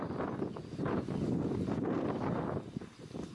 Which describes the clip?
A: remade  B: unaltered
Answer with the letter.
B